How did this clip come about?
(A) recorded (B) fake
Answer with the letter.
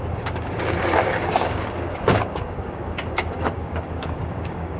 B